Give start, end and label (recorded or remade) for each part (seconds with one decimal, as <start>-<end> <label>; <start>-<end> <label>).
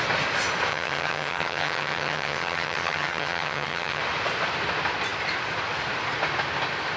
0.0-0.7 recorded; 0.7-4.0 remade; 4.0-7.0 recorded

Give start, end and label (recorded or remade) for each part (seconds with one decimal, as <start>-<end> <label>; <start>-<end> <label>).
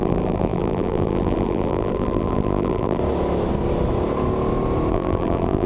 0.0-3.0 remade; 3.0-4.9 recorded; 4.9-5.7 remade